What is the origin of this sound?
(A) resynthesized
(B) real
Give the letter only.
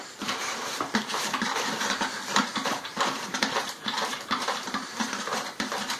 A